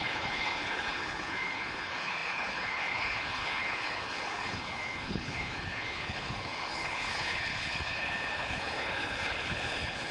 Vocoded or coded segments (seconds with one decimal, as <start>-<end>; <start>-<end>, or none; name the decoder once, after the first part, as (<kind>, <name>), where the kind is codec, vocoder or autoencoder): 0.0-10.1 (codec, HILCodec)